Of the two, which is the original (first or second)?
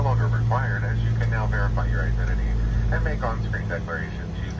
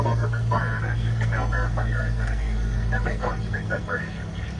first